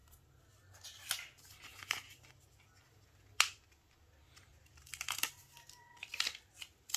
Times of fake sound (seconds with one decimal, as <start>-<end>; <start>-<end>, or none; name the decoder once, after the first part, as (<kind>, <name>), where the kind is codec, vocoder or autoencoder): 4.5-5.3 (vocoder, BigVGAN v2)